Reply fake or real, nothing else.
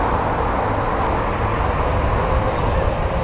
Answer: real